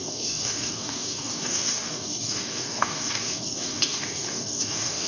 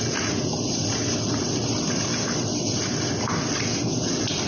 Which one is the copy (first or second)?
first